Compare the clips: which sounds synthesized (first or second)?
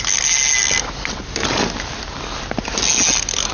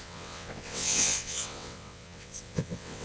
second